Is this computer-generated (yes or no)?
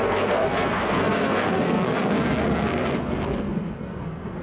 yes